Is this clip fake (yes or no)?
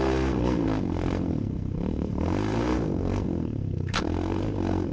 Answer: yes